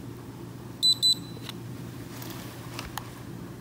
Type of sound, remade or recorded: recorded